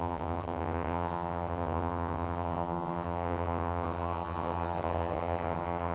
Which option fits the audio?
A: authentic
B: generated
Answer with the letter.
B